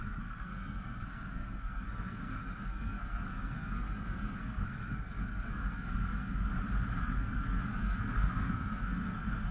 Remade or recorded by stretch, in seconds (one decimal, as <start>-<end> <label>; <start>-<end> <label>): 0.0-6.5 remade; 6.5-7.0 recorded; 7.0-9.5 remade